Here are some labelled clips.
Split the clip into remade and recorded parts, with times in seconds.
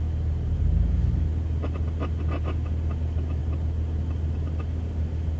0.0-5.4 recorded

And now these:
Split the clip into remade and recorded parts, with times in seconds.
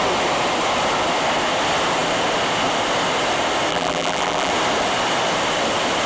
0.0-3.7 recorded; 3.7-4.5 remade; 4.5-6.1 recorded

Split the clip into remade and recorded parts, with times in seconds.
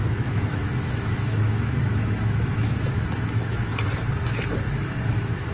0.0-3.7 remade; 3.7-4.7 recorded; 4.7-5.5 remade